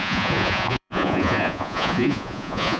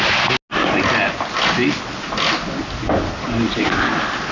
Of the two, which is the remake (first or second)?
first